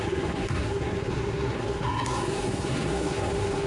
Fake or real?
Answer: fake